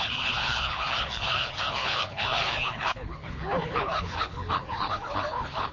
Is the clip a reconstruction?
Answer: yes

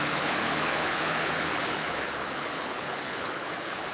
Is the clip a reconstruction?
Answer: yes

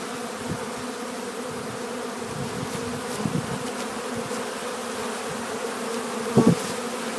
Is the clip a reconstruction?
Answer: no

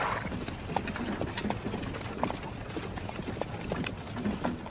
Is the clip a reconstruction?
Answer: no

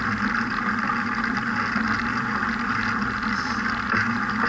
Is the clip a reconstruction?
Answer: no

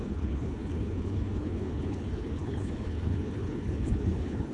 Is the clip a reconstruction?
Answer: yes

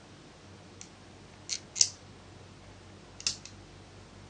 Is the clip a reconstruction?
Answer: no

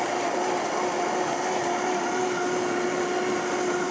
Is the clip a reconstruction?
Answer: no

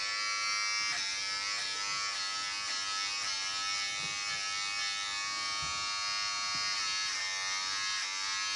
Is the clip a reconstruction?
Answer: no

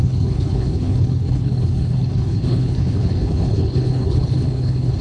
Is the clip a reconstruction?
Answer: yes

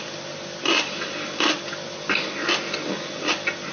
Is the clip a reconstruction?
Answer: no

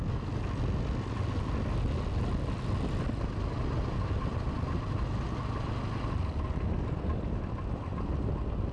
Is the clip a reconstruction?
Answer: no